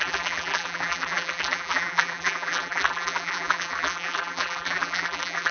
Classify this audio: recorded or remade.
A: remade